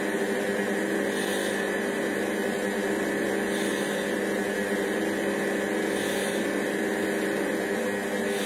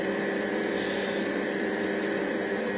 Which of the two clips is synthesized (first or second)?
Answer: second